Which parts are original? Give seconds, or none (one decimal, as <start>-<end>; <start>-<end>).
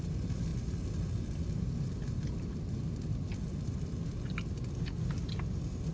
0.0-5.9